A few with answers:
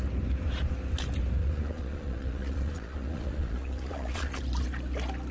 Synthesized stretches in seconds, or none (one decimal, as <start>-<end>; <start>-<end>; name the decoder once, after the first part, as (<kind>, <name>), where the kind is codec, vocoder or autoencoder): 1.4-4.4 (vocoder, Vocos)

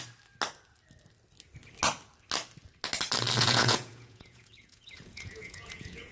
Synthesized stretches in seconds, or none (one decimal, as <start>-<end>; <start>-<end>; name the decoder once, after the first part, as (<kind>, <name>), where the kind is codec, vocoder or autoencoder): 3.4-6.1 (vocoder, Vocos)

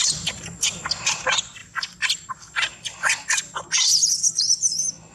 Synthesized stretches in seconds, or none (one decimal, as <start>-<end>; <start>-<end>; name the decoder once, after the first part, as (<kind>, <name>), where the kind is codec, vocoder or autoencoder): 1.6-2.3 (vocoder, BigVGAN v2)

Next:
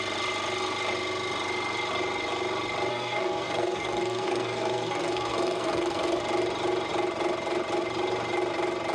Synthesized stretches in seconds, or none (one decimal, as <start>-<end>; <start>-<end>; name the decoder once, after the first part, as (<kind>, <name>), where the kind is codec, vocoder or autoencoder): 2.9-6.2 (codec, SNAC)

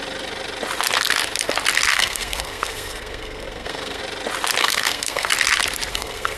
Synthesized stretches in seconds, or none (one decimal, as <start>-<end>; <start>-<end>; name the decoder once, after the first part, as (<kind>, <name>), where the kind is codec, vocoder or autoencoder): 1.9-4.0 (codec, SNAC); 4.6-5.3; 5.9-6.4

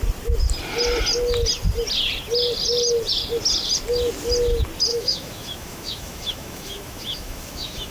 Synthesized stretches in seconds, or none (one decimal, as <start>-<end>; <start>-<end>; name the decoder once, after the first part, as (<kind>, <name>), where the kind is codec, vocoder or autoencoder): 4.9-7.9 (autoencoder, DAC-VAE)

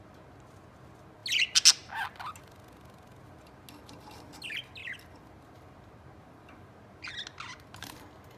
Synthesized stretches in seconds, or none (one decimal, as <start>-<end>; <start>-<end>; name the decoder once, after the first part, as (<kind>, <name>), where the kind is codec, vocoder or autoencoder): none